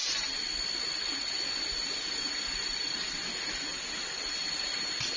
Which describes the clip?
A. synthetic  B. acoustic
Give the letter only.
B